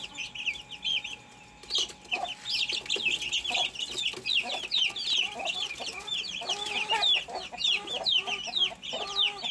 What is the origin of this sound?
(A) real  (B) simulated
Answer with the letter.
A